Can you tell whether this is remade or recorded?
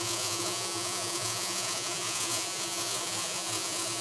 remade